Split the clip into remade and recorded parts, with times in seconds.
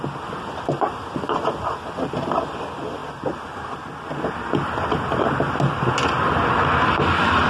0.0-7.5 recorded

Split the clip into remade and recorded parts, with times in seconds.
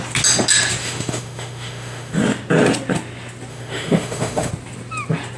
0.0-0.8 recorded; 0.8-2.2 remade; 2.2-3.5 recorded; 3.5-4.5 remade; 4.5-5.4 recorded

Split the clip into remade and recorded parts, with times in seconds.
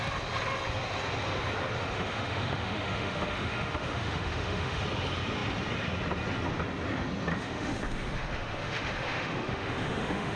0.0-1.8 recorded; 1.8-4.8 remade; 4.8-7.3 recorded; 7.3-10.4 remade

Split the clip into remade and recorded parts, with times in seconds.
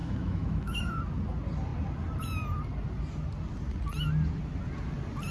0.0-0.8 remade; 0.8-5.3 recorded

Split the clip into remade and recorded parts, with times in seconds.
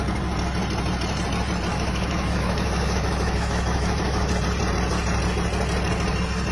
0.0-1.7 recorded; 1.7-4.3 remade; 4.3-6.5 recorded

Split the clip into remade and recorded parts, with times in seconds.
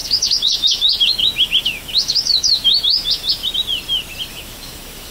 0.0-3.4 remade; 3.4-4.3 recorded; 4.3-5.1 remade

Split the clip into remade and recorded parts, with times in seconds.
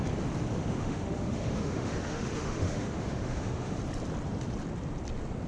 0.0-0.5 recorded; 0.5-3.8 remade; 3.8-5.5 recorded